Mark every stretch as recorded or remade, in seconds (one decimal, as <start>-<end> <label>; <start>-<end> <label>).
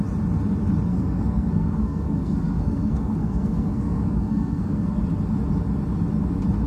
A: 0.0-0.9 recorded; 0.9-4.9 remade; 4.9-6.7 recorded